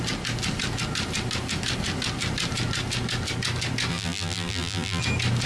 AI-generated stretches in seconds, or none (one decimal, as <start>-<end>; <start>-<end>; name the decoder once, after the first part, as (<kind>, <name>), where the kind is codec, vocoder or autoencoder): 3.9-5.0 (vocoder, BigVGAN v2)